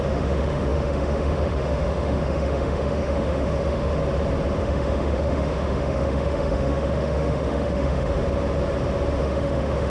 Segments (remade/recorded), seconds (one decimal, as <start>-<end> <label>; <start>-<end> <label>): 0.0-4.0 remade; 4.0-4.6 recorded; 4.6-8.1 remade; 8.1-9.2 recorded; 9.2-9.9 remade